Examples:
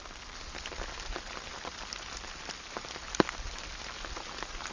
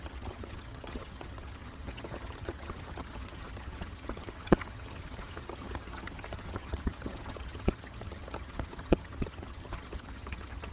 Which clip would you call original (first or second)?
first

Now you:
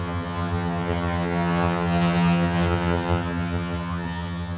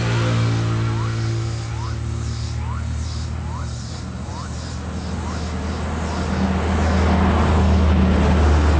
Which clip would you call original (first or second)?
second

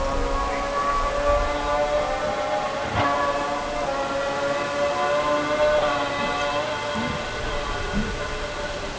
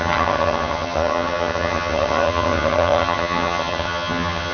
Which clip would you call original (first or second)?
first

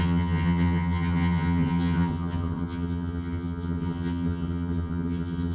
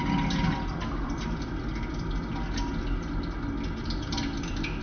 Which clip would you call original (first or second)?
second